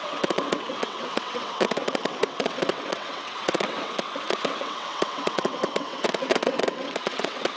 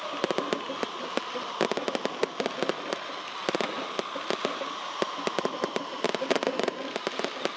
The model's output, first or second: first